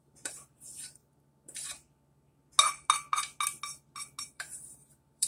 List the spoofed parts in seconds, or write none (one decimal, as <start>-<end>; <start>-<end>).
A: 0.0-1.0; 4.2-5.3